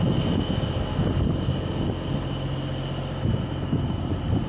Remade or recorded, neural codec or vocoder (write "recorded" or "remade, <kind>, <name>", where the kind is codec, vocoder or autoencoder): recorded